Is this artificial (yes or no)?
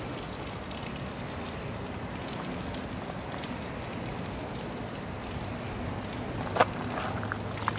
no